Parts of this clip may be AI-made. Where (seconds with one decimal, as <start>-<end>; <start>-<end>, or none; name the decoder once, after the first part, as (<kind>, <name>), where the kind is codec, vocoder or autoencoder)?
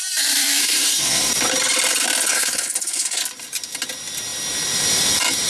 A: 0.6-1.3 (codec, SNAC); 2.3-3.2